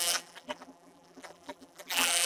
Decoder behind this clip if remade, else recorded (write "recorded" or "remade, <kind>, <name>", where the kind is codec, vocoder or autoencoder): remade, vocoder, BigVGAN v2